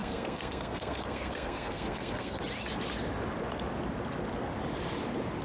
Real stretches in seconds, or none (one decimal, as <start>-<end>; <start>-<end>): 2.4-5.4